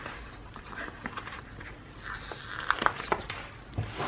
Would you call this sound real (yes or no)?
yes